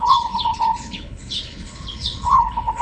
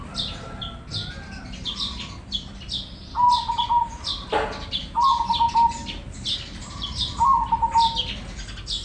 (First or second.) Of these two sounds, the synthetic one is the first